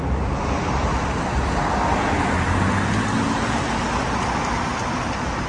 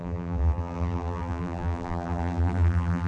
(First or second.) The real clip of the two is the first